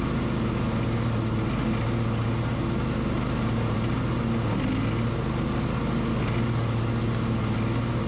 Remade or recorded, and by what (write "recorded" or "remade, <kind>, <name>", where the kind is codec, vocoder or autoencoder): recorded